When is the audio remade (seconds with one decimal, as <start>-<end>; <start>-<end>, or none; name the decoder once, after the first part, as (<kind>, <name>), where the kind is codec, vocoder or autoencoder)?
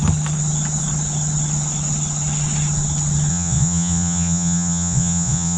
3.3-5.6 (vocoder, Vocos)